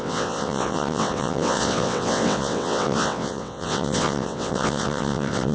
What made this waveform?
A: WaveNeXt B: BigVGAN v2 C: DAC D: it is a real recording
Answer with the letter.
A